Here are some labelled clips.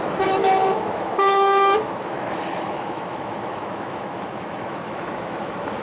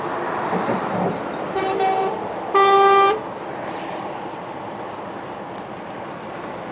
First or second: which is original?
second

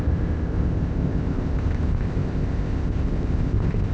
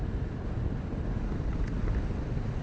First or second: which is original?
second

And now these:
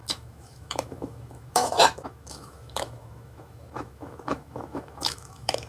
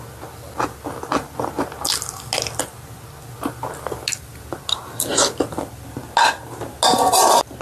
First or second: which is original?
second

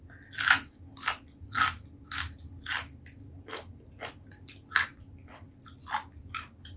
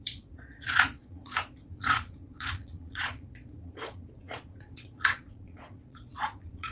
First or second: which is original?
first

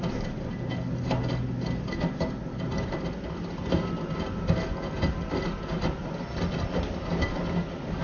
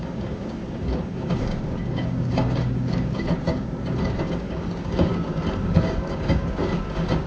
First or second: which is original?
first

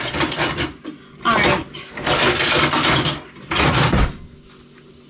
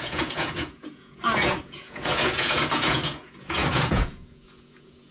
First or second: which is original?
first